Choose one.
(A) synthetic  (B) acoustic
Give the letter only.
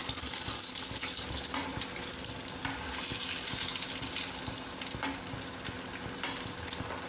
B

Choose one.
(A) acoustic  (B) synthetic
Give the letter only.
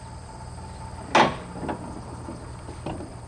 A